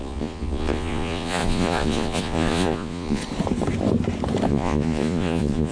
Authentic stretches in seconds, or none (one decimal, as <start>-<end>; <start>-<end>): 3.2-4.5